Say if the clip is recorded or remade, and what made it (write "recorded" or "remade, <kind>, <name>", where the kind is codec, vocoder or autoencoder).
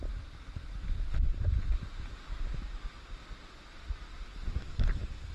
recorded